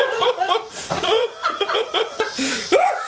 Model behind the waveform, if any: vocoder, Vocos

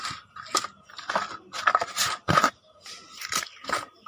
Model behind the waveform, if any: none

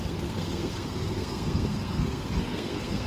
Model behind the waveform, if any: codec, SNAC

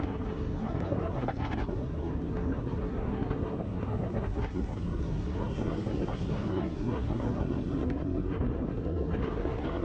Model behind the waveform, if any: codec, SNAC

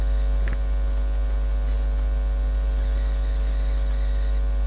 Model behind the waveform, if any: none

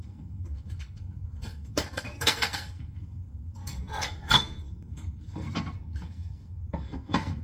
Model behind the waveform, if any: codec, SNAC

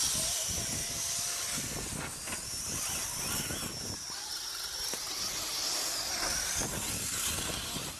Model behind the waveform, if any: none